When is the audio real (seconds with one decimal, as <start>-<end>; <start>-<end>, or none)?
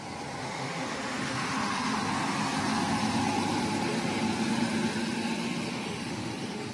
0.0-0.4; 2.0-5.7